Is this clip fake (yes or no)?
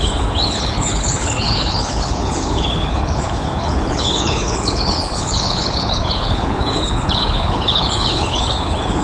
yes